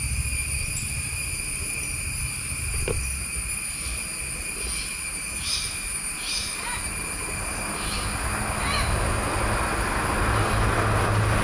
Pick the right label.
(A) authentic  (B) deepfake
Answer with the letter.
A